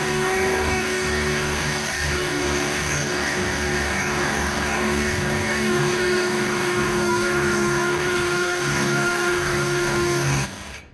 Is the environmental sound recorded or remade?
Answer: remade